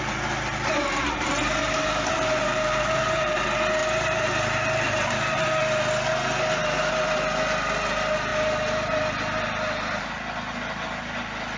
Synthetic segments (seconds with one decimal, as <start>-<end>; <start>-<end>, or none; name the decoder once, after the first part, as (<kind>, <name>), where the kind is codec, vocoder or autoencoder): 1.6-3.4 (vocoder, BigVGAN v2); 3.8-5.6